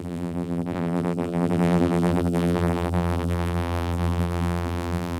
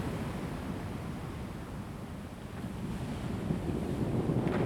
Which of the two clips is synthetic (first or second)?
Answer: first